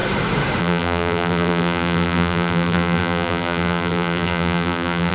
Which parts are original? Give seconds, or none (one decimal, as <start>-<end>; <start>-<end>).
0.0-0.6